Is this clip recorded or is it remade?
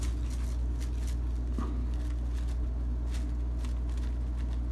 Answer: recorded